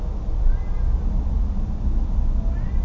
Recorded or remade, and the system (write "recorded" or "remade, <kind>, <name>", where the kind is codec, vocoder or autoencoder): recorded